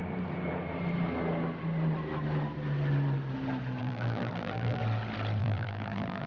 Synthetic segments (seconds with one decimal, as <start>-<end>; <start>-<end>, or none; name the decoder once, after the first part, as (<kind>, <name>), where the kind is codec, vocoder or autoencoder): 3.8-4.8 (vocoder, BigVGAN v2); 5.4-6.3